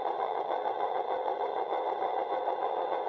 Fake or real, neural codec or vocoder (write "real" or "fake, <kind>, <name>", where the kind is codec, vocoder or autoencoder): fake, vocoder, WaveNeXt